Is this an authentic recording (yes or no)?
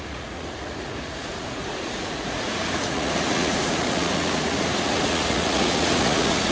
no